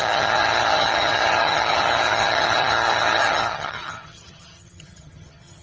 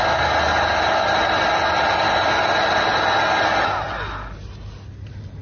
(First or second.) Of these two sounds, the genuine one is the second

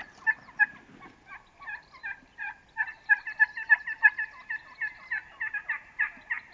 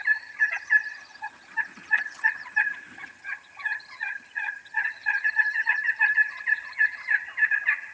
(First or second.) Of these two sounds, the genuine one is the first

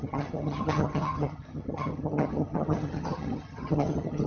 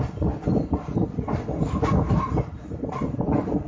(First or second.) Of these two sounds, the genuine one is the second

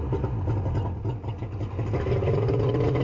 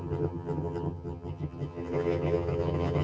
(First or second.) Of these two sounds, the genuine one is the first